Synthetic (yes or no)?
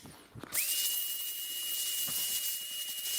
no